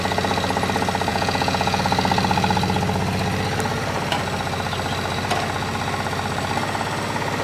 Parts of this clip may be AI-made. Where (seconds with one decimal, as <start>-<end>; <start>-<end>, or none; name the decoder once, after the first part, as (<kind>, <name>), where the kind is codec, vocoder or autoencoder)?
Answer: 1.1-1.8 (vocoder, Vocos)